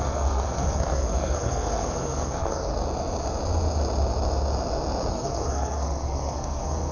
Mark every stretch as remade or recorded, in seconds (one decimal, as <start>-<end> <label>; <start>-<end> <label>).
0.0-2.7 remade; 2.7-5.1 recorded; 5.1-6.9 remade